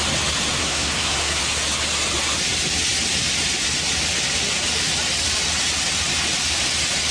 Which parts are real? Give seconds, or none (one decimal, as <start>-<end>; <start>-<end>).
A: 0.0-0.6; 1.4-7.1